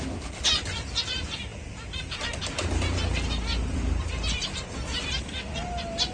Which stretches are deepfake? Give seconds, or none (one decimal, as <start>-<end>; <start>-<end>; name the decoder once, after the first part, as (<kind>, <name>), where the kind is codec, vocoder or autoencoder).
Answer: none